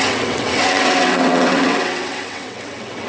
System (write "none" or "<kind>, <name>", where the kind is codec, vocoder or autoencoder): vocoder, WaveNeXt